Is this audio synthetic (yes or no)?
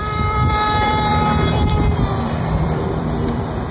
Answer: yes